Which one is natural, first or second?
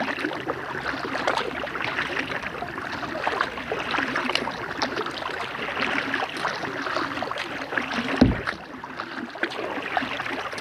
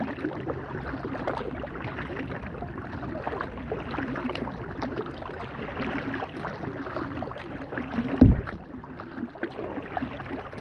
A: first